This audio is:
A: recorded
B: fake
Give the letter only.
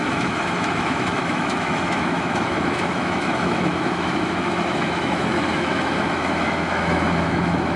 B